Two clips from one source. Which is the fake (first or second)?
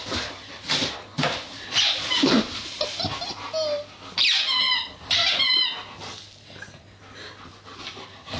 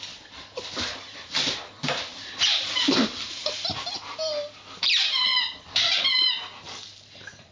second